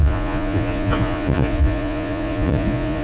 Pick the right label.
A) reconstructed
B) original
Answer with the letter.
A